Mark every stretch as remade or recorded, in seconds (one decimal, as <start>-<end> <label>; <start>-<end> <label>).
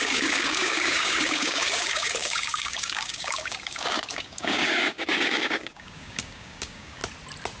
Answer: 0.0-7.0 remade; 7.0-7.6 recorded